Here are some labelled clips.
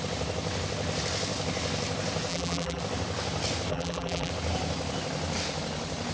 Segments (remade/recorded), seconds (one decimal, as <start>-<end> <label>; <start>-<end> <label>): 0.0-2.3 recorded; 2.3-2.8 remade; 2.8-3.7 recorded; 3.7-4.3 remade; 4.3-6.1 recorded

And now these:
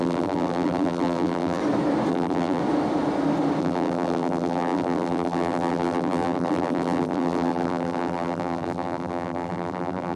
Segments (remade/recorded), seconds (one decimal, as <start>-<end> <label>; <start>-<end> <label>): 0.0-1.6 remade; 1.6-2.1 recorded; 2.1-2.6 remade; 2.6-3.6 recorded; 3.6-10.2 remade

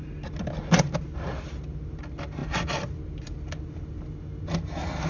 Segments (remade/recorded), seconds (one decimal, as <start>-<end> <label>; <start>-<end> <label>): 0.0-5.1 recorded